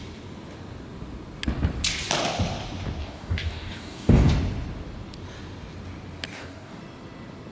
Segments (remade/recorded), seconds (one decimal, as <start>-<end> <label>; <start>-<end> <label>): 0.0-3.0 recorded; 3.0-4.3 remade; 4.3-6.3 recorded; 6.3-6.8 remade; 6.8-7.5 recorded